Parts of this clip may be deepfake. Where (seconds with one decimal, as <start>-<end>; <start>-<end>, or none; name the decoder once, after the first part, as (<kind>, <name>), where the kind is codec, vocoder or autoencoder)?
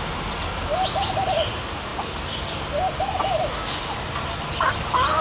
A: none